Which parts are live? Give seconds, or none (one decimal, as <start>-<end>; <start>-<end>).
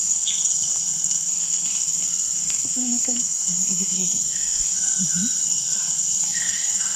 5.0-5.5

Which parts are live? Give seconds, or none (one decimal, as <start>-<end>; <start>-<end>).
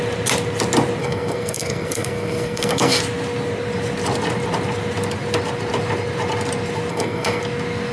0.0-1.0; 3.0-6.9; 7.4-7.9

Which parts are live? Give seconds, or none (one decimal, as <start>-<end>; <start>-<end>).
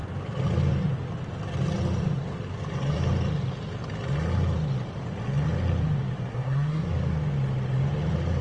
0.0-6.3; 6.9-8.4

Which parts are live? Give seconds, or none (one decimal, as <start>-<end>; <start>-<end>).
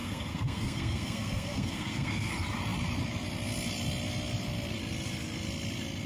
2.3-6.1